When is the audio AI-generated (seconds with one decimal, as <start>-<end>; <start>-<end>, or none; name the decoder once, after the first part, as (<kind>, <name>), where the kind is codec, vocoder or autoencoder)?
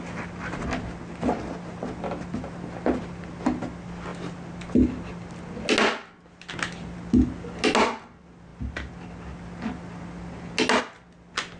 none